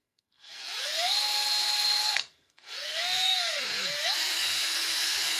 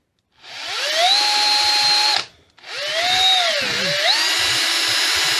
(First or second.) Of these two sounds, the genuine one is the second